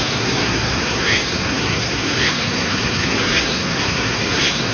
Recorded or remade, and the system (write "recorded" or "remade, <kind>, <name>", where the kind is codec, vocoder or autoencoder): remade, codec, SNAC